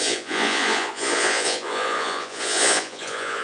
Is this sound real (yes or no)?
no